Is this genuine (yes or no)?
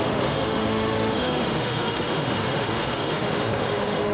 no